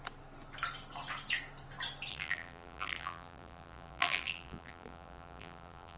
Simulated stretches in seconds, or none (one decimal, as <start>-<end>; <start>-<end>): 2.1-6.0